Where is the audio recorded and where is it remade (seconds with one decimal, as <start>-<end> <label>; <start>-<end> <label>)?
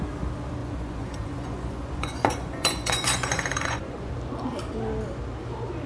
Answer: 0.0-0.6 recorded; 0.6-4.1 remade; 4.1-5.9 recorded